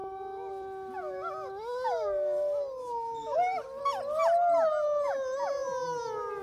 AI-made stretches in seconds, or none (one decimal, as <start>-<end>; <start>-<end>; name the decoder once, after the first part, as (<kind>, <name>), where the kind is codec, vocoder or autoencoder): none